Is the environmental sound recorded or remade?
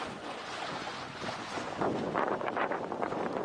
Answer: remade